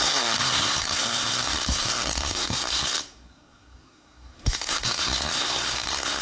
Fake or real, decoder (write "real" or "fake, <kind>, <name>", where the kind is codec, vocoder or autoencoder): fake, codec, SNAC